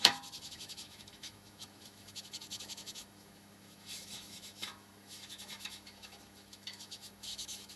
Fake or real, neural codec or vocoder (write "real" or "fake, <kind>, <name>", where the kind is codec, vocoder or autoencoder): fake, autoencoder, DAC-VAE